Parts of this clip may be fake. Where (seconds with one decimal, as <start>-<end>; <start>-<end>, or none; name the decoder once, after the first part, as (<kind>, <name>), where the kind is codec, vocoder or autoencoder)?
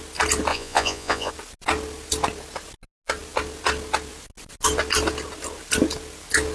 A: 0.5-1.3 (vocoder, Vocos)